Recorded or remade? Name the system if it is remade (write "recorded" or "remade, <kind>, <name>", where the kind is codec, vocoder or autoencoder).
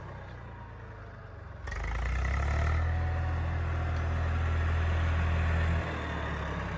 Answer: recorded